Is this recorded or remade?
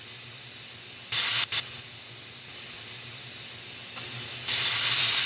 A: recorded